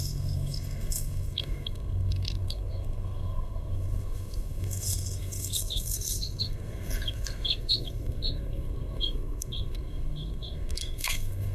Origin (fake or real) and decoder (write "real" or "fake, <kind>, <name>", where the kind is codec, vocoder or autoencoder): fake, codec, SNAC